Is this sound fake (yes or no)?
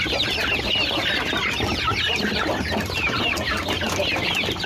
yes